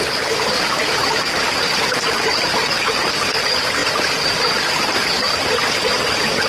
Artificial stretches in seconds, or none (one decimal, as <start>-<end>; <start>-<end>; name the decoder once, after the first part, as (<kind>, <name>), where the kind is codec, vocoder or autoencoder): none